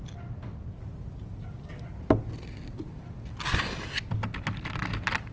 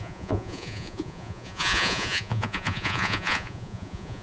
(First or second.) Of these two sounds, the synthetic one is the second